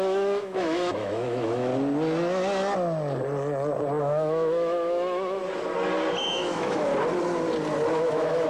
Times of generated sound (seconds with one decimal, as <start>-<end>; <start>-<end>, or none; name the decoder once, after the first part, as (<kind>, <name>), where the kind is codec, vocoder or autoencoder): 0.0-1.7 (autoencoder, DAC-VAE); 4.0-5.4; 6.2-6.9; 7.9-8.5